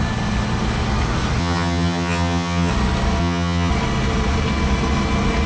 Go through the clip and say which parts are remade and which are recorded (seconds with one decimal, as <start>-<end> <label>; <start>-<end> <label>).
0.0-1.4 recorded; 1.4-2.7 remade; 2.7-3.2 recorded; 3.2-3.7 remade; 3.7-5.5 recorded